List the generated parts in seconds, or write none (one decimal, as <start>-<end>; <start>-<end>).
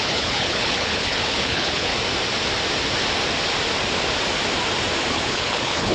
0.0-1.9; 5.1-5.9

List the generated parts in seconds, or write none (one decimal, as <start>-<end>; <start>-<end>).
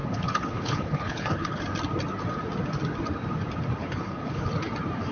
0.0-1.6; 3.8-4.5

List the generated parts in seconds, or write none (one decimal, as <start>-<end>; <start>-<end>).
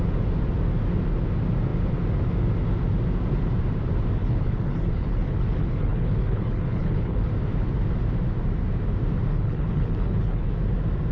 4.2-7.3; 9.3-10.5